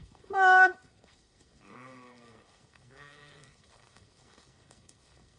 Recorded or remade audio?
remade